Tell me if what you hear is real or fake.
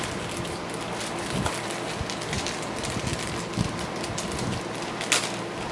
real